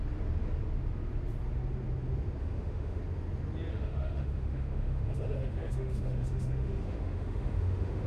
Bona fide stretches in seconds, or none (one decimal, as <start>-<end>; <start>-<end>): 0.0-2.4; 3.0-3.7

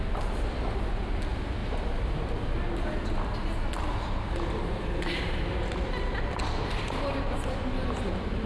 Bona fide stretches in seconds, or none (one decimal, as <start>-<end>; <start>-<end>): 0.0-1.6; 2.4-8.5

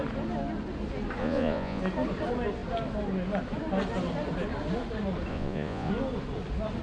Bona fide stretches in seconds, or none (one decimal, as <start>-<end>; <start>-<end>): 0.0-1.2; 1.8-5.3; 5.9-6.8

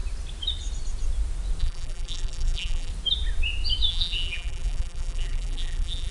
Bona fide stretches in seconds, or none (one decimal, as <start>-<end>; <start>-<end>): 0.0-1.6; 2.9-3.9

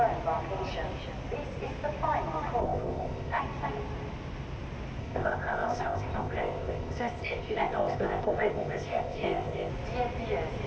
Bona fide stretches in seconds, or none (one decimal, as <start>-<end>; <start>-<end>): 0.0-2.6; 3.4-5.0; 9.7-10.7

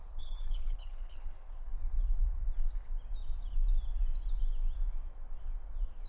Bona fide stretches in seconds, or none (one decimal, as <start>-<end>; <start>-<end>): 1.7-6.1

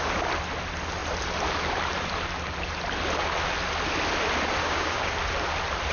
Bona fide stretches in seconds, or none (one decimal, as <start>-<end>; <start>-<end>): 0.0-4.6; 5.1-5.9